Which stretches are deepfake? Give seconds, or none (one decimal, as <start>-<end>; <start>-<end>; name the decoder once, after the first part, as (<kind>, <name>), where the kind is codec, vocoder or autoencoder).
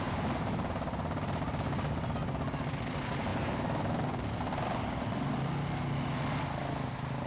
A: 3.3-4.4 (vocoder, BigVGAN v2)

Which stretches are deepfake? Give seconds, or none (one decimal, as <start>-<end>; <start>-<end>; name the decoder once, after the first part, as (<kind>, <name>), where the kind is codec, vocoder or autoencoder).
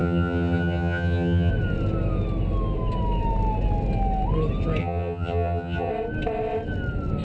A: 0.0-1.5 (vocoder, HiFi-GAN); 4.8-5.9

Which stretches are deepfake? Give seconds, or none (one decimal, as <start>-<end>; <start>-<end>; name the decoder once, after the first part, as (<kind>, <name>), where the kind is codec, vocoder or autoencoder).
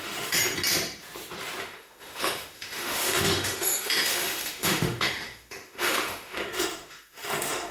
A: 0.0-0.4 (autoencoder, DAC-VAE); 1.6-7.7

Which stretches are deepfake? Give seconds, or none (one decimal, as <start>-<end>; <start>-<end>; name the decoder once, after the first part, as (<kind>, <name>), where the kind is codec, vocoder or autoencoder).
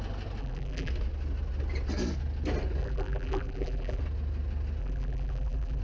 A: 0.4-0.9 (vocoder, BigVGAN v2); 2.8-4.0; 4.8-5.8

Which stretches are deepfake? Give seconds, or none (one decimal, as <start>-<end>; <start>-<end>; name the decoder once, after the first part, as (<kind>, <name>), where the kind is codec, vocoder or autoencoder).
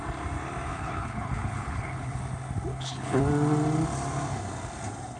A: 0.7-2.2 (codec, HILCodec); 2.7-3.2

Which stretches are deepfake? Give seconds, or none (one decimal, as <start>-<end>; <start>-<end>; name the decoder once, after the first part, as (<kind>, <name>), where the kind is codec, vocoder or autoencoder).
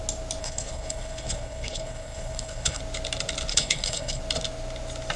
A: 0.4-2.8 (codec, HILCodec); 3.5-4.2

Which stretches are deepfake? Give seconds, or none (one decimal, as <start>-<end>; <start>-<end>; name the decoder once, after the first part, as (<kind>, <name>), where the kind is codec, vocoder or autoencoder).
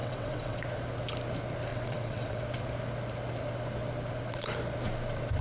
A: 0.0-0.6 (vocoder, WaveNeXt); 1.7-2.4